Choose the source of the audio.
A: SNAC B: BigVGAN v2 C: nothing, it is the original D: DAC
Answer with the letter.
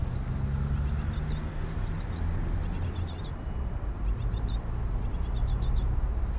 C